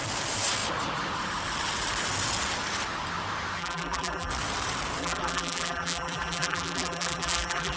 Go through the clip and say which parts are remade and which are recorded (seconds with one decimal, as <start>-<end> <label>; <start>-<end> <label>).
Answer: 0.0-3.6 recorded; 3.6-4.3 remade; 4.3-5.0 recorded; 5.0-7.8 remade